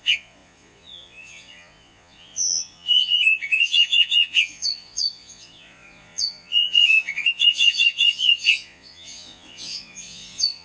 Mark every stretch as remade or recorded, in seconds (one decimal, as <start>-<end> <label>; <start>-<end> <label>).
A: 0.0-10.6 remade